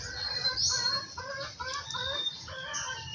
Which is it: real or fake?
real